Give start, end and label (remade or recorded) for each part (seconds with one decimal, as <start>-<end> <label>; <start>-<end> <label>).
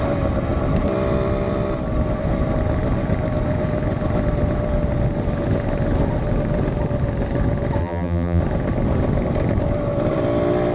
0.0-7.8 recorded; 7.8-8.4 remade; 8.4-10.7 recorded